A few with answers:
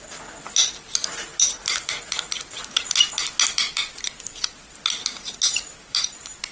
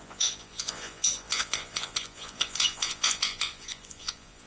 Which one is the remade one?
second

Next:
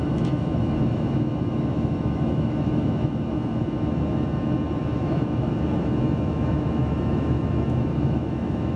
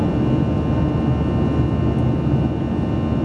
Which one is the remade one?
first